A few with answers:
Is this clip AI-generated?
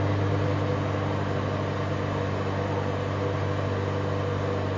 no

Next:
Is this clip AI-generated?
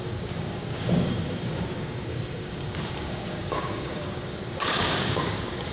yes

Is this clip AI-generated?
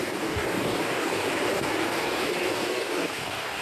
yes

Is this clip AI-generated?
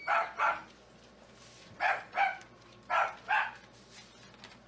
no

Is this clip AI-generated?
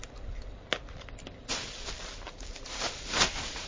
no